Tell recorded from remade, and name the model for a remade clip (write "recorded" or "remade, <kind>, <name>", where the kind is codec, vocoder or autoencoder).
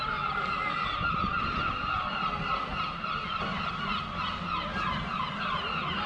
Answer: recorded